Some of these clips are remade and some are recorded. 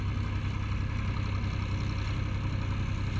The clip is recorded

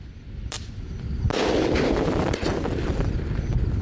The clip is recorded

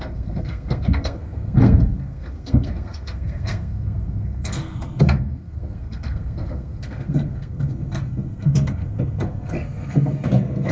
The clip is remade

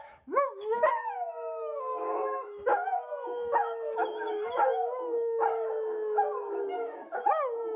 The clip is remade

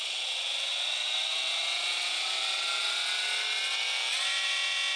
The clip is remade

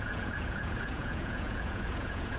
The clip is remade